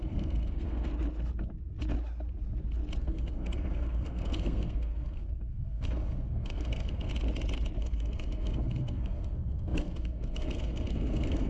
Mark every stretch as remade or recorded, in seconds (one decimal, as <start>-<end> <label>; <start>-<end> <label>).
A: 0.0-0.9 remade; 0.9-3.0 recorded; 3.0-7.1 remade; 7.1-7.8 recorded; 7.8-11.5 remade